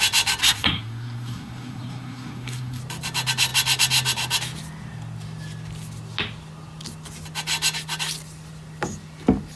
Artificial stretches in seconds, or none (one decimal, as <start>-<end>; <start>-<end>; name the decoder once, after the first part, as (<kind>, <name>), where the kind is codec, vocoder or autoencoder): 0.4-2.8 (codec, SNAC)